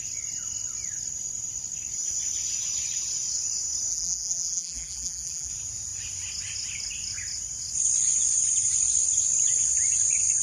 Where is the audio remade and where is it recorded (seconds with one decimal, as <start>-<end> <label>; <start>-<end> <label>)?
0.0-3.9 recorded; 3.9-5.5 remade; 5.5-10.4 recorded